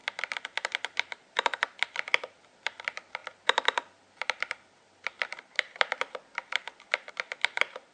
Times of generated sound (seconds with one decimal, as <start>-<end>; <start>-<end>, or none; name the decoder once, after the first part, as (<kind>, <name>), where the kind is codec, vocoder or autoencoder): 3.2-7.1 (vocoder, BigVGAN v2)